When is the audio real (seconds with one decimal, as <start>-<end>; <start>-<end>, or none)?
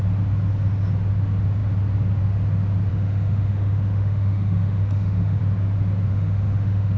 0.0-2.9; 5.4-6.1